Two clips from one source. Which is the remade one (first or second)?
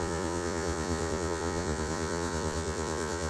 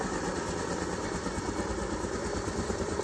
first